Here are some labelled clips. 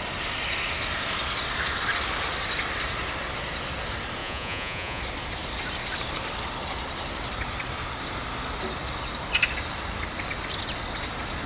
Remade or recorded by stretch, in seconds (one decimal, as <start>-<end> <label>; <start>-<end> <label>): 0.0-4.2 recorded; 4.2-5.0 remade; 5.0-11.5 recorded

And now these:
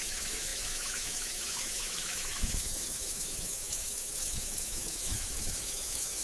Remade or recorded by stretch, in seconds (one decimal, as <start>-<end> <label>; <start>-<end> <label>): 0.0-6.2 remade

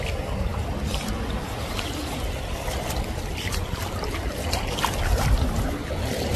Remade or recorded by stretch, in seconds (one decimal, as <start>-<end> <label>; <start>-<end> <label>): 0.0-0.5 recorded; 0.5-1.1 remade; 1.1-6.4 recorded

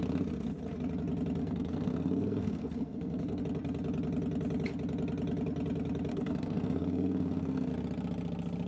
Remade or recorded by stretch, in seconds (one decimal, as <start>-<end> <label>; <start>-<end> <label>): 0.0-1.4 recorded; 1.4-3.4 remade; 3.4-6.1 recorded; 6.1-7.7 remade; 7.7-8.7 recorded

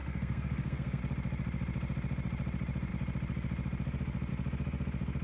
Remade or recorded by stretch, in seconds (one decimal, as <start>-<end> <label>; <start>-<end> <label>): 0.0-1.0 remade; 1.0-5.2 recorded

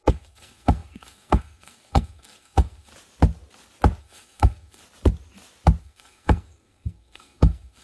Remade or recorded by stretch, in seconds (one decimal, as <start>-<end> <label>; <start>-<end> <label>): 0.0-2.9 remade; 2.9-4.0 recorded; 4.0-4.8 remade; 4.8-5.8 recorded; 5.8-7.8 remade

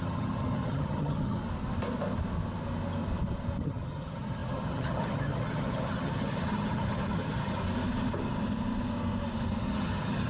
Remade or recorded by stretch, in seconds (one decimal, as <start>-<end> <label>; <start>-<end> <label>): 0.0-1.4 remade; 1.4-3.6 recorded; 3.6-7.6 remade; 7.6-9.6 recorded; 9.6-10.3 remade

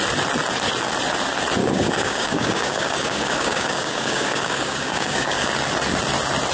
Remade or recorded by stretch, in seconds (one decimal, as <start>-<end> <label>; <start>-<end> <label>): 0.0-1.6 recorded; 1.6-5.5 remade; 5.5-6.5 recorded